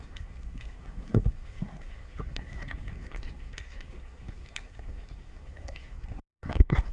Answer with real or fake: fake